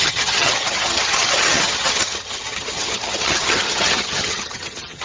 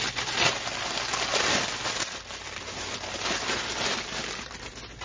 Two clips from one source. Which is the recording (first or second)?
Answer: second